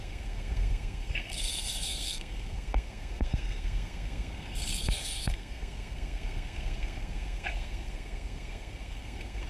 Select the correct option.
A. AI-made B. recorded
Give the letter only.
A